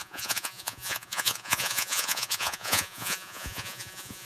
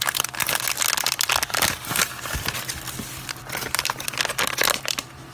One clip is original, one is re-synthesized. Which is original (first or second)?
second